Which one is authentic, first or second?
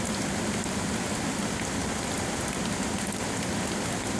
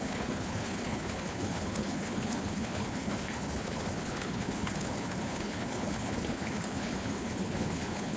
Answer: first